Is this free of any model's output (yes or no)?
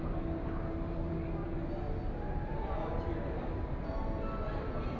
yes